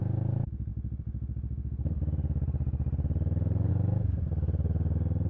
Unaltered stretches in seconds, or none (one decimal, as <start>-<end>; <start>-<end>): 0.0-5.3